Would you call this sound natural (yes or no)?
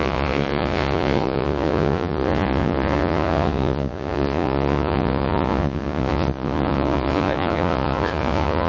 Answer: no